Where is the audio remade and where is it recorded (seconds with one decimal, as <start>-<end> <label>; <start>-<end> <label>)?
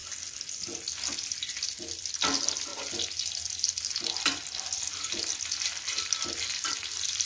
0.0-7.3 recorded